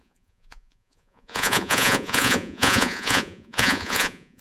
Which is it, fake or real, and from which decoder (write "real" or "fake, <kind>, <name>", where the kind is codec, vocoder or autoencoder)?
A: fake, vocoder, Vocos